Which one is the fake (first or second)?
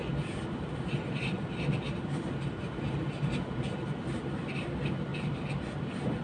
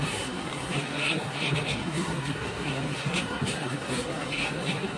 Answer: second